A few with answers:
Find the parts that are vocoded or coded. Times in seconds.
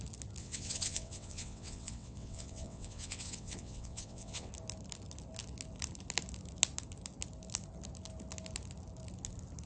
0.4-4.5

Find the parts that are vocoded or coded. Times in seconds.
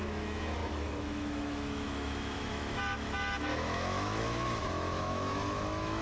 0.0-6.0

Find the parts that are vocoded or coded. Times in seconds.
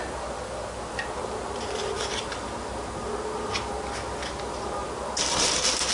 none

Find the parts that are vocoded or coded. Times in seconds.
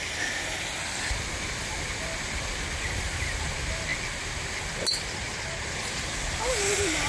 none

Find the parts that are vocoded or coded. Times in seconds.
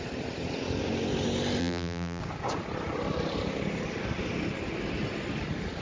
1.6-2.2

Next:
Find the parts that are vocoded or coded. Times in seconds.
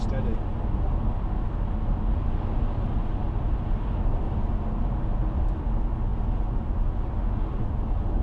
none